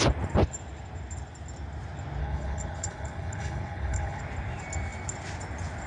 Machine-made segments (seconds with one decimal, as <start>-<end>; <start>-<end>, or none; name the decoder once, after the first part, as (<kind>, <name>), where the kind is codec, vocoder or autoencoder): 2.2-4.2 (codec, HILCodec)